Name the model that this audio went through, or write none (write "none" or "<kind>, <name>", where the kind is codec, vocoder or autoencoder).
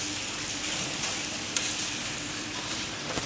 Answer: none